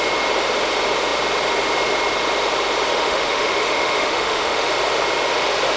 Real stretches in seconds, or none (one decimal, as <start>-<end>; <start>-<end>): 0.0-2.9; 4.7-5.8